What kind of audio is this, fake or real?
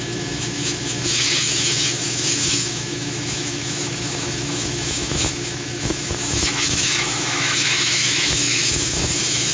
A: fake